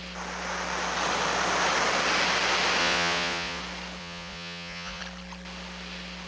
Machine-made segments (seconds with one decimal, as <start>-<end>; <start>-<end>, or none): 2.8-3.6; 4.0-5.0

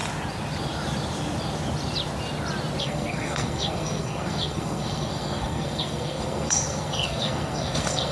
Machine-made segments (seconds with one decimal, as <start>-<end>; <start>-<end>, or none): 2.8-8.1

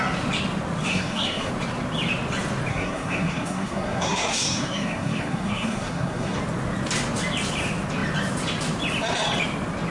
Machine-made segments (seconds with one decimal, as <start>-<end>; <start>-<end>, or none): 0.8-1.5; 2.7-6.4

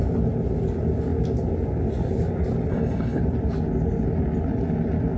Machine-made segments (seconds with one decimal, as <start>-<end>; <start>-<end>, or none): 2.7-3.2

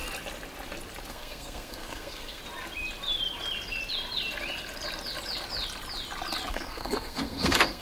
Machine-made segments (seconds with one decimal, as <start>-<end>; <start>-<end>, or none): 1.1-2.4; 6.5-7.8

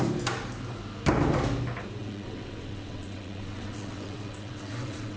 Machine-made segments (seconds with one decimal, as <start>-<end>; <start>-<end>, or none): 2.0-5.2